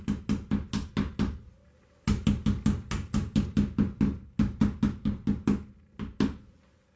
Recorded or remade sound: recorded